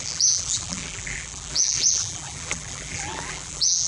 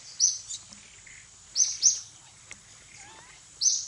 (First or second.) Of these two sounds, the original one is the second